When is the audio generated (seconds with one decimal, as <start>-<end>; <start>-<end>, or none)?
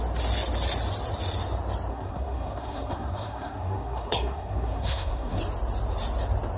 1.9-5.4